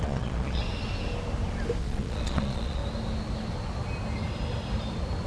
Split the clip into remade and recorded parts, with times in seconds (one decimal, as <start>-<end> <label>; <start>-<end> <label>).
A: 0.0-0.6 remade; 0.6-1.8 recorded; 1.8-2.8 remade; 2.8-5.3 recorded